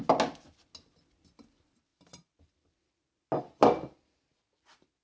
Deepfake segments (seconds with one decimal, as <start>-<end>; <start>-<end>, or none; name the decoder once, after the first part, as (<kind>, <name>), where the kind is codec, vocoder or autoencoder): none